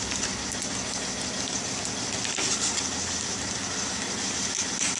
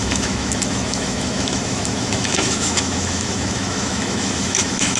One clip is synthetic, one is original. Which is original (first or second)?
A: first